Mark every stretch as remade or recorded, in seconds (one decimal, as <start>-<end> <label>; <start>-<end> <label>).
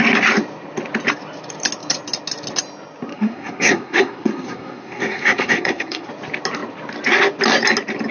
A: 0.0-3.1 recorded; 3.1-6.1 remade; 6.1-8.1 recorded